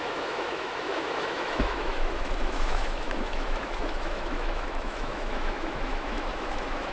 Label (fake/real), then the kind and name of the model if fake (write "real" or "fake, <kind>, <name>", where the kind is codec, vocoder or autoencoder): fake, autoencoder, DAC-VAE